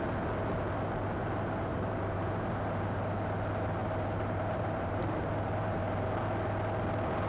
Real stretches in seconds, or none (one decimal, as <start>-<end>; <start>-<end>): 0.0-1.7; 2.3-3.8; 6.2-7.3